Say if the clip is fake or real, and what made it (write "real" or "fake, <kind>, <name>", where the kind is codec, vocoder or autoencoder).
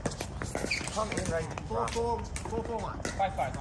real